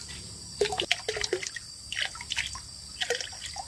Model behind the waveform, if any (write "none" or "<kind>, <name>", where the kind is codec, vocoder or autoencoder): none